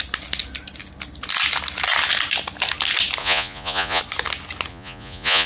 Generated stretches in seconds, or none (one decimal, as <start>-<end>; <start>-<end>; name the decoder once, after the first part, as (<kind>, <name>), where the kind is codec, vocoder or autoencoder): 3.2-4.0 (vocoder, Vocos); 4.7-5.5